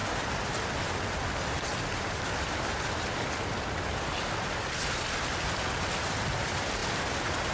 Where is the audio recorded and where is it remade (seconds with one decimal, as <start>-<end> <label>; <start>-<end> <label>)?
0.0-7.5 recorded